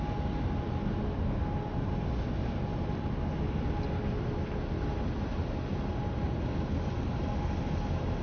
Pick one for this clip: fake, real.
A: real